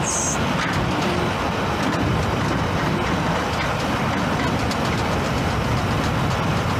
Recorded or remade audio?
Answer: recorded